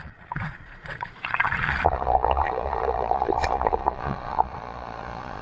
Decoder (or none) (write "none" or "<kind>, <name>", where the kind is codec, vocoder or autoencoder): vocoder, Vocos